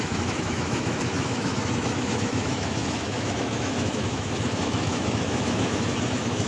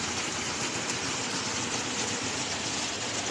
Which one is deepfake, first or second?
first